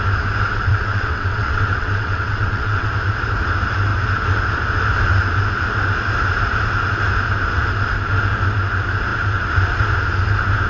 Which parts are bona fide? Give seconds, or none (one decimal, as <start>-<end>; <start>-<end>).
0.0-0.7; 2.9-10.7